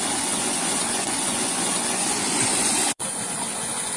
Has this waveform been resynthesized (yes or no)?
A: yes